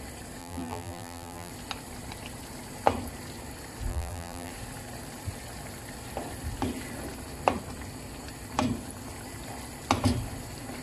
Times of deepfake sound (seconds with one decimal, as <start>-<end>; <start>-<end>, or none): 0.4-1.5; 3.9-4.5